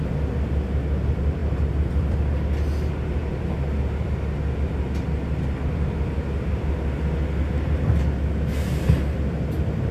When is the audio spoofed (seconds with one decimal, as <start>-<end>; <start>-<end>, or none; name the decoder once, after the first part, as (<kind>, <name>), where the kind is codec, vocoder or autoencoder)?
1.4-2.2 (vocoder, BigVGAN v2)

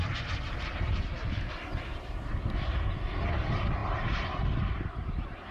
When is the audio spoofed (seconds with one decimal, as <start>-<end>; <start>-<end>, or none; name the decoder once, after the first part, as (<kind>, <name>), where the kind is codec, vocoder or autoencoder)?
none

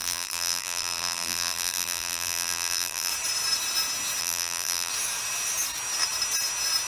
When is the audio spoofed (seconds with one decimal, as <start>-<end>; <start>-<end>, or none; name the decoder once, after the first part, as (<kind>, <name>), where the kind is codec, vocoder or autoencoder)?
0.0-3.1 (vocoder, BigVGAN v2); 4.2-4.9

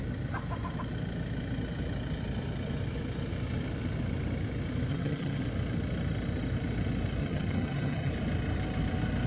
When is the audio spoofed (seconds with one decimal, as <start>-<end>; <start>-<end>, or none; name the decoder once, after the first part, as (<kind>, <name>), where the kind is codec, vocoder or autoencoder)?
4.9-5.4 (vocoder, HiFi-GAN); 7.2-8.1

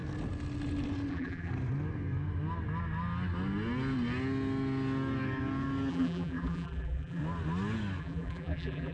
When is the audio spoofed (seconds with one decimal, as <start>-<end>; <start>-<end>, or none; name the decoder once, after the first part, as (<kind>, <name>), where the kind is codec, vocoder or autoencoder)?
1.1-1.5 (vocoder, BigVGAN v2); 5.9-7.2; 8.0-8.9